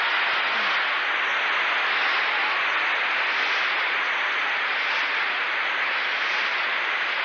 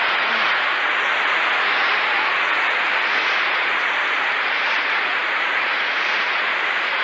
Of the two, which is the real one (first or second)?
first